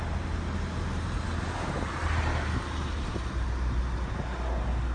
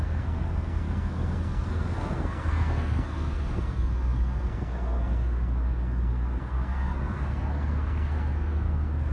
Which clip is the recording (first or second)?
first